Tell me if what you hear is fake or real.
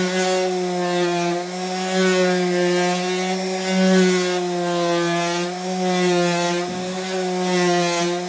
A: real